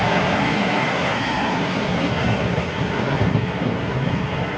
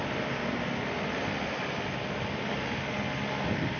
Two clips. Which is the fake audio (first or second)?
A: first